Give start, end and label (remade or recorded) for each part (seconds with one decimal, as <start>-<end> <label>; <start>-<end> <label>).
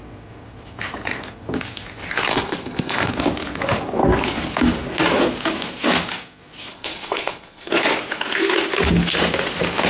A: 0.0-2.3 recorded; 2.3-3.1 remade; 3.1-6.7 recorded; 6.7-7.7 remade; 7.7-9.9 recorded